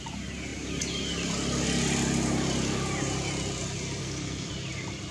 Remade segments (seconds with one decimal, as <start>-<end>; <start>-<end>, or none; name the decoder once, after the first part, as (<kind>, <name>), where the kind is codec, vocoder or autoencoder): 4.0-4.5 (codec, SNAC)